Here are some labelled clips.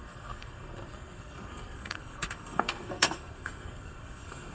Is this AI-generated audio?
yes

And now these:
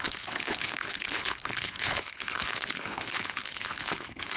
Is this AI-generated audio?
yes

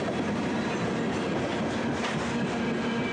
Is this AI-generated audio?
no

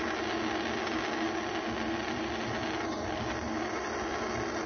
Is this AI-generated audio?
no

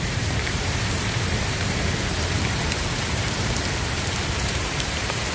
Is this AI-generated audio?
yes